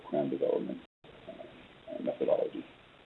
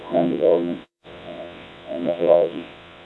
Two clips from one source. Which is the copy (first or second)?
second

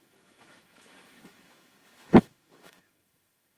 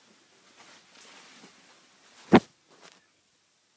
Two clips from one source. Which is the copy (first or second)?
first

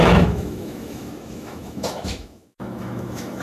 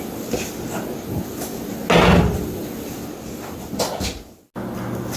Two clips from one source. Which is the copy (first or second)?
first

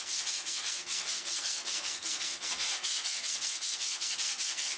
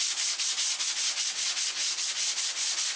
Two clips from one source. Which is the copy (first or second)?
first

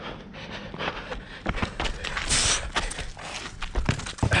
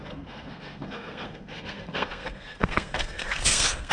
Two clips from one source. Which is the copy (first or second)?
second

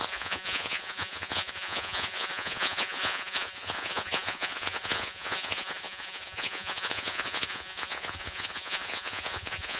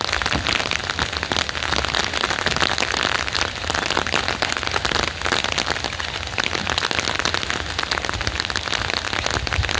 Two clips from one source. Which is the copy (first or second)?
first